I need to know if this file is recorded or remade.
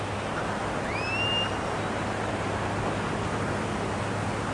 recorded